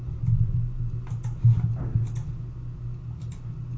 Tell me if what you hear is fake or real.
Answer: real